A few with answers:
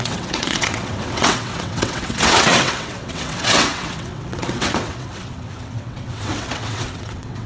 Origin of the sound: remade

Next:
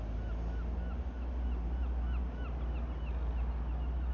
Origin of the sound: recorded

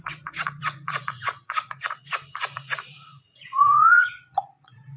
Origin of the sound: remade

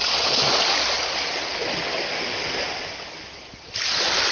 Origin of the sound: recorded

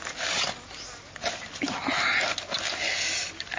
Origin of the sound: recorded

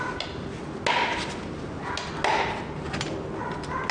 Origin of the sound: recorded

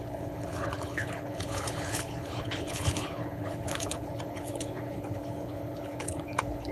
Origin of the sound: remade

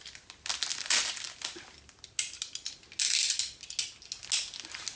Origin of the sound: recorded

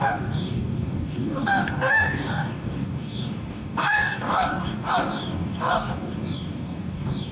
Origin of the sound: remade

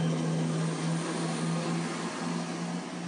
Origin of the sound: recorded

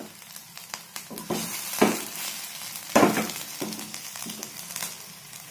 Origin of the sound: recorded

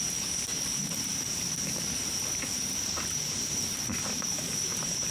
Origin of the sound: remade